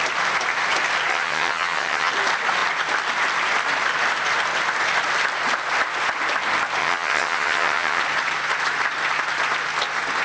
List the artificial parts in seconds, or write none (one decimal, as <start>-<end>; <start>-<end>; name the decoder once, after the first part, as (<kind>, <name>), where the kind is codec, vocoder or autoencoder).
1.1-2.1 (vocoder, HiFi-GAN); 6.8-8.0